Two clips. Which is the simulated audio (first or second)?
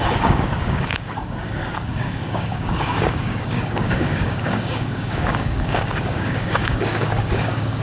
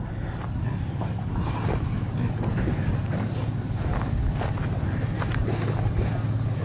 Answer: first